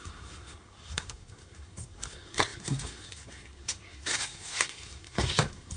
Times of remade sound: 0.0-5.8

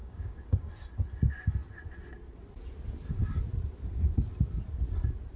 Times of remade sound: 0.0-0.7

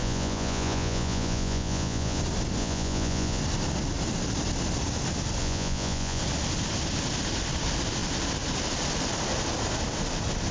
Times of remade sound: 0.0-2.2; 2.6-3.4; 5.4-6.2

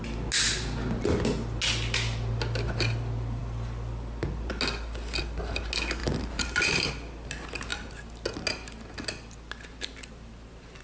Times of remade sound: 6.0-6.9

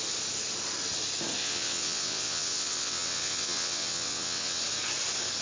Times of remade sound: 1.4-4.6

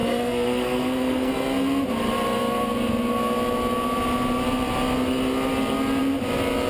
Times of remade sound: 0.0-1.3